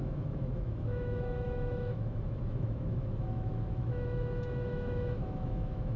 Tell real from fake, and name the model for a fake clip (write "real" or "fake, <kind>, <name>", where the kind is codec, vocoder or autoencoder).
fake, autoencoder, DAC-VAE